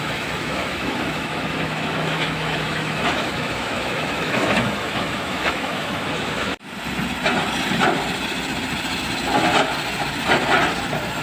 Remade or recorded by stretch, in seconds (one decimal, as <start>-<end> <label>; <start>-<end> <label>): 0.0-6.5 remade; 6.5-11.2 recorded